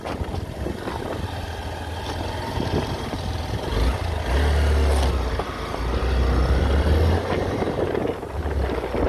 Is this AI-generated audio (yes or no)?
no